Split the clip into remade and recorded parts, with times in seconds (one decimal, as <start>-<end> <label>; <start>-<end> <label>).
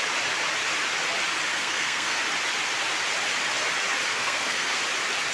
0.0-1.5 recorded; 1.5-2.2 remade; 2.2-4.1 recorded; 4.1-4.8 remade; 4.8-5.3 recorded